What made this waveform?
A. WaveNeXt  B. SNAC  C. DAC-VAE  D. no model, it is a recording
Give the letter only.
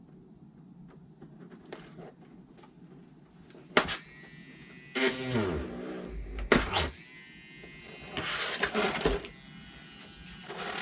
D